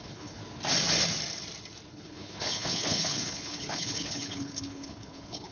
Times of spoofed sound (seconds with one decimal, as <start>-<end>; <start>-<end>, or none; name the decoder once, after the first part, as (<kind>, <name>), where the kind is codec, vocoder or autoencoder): 0.0-0.4 (codec, HILCodec); 1.9-5.5